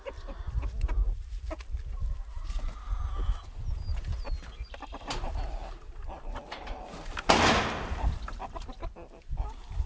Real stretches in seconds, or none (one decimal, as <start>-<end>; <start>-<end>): 0.0-9.9